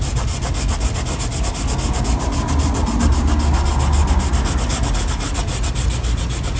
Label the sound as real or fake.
real